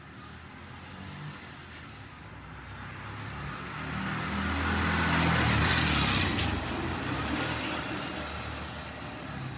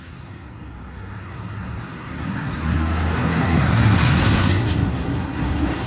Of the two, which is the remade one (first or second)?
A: second